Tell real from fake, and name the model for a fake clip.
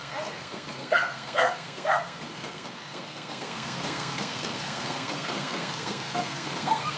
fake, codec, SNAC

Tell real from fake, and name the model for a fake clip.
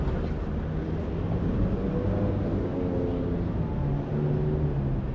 real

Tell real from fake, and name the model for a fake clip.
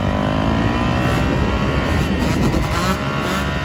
real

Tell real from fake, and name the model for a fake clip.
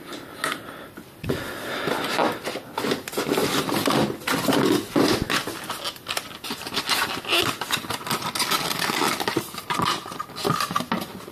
real